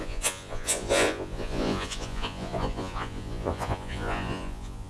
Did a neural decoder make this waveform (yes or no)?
yes